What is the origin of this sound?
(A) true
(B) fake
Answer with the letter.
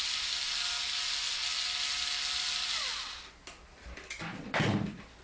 A